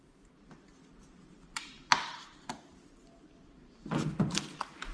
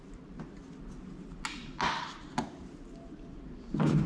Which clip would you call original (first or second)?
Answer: second